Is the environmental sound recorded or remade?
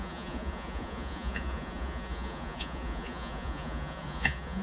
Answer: remade